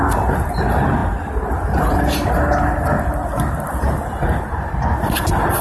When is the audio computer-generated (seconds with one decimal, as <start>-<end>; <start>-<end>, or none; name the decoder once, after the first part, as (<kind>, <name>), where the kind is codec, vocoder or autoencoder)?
none

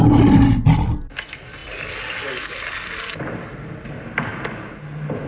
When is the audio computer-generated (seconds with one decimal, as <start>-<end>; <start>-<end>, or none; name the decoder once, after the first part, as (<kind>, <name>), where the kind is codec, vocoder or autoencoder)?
none

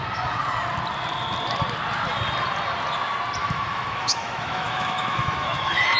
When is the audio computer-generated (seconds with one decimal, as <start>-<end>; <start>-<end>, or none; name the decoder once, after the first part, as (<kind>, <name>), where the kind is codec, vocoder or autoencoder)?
3.4-6.0 (autoencoder, DAC-VAE)